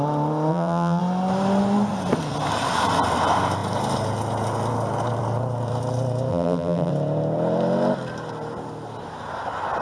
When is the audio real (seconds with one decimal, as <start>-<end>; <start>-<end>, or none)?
0.0-0.5; 1.0-6.3; 6.9-9.8